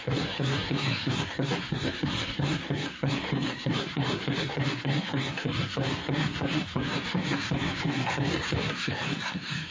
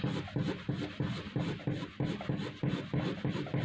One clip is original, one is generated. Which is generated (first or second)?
first